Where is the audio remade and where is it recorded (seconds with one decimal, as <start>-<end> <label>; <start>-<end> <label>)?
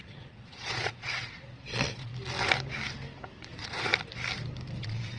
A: 0.0-2.1 remade; 2.1-3.4 recorded; 3.4-3.9 remade; 3.9-4.8 recorded; 4.8-5.2 remade